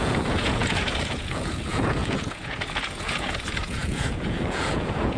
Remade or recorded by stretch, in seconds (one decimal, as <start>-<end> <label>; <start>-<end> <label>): 0.0-5.2 remade